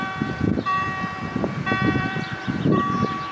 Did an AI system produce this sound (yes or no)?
yes